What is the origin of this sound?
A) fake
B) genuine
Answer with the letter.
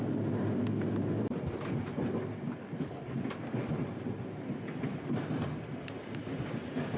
B